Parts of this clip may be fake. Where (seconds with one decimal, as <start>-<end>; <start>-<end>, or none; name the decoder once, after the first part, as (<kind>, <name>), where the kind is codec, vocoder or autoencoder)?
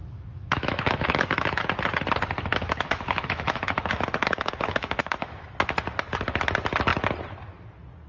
0.0-1.6 (autoencoder, DAC-VAE); 2.5-5.5